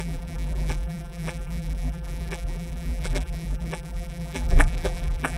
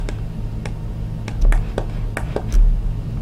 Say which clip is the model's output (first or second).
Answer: first